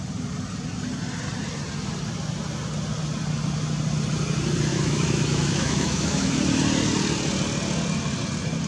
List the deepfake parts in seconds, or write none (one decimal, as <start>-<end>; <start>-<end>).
4.7-6.3